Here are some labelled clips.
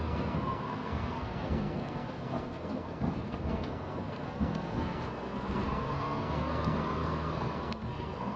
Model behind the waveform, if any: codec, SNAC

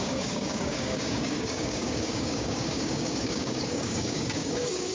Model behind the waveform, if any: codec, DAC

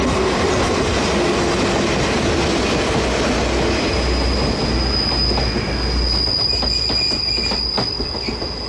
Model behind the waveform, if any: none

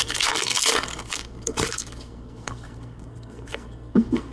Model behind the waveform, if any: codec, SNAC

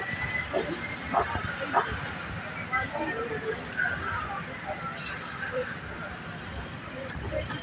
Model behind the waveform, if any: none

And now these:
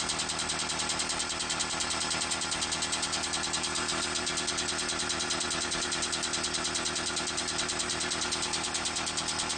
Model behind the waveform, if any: none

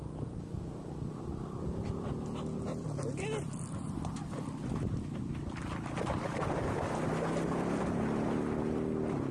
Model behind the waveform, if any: none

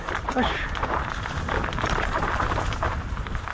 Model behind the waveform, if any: none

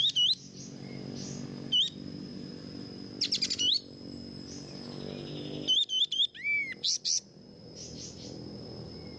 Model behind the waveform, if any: none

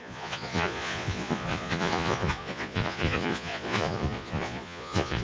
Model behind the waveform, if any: vocoder, Vocos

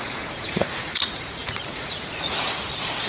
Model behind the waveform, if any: vocoder, Vocos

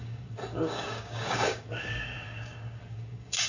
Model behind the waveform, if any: codec, DAC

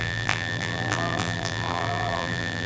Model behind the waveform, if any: vocoder, BigVGAN v2